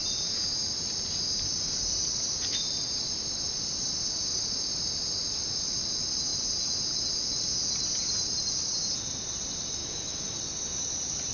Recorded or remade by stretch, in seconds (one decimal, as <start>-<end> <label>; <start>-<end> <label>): 0.0-9.8 recorded; 9.8-10.4 remade; 10.4-11.3 recorded